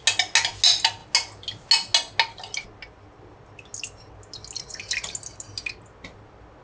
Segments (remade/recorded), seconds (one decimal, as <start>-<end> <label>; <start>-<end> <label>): 0.0-6.6 recorded

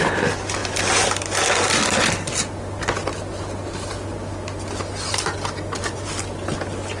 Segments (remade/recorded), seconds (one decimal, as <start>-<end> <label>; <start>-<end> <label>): 0.0-7.0 recorded